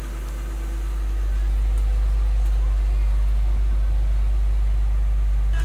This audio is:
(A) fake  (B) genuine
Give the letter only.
B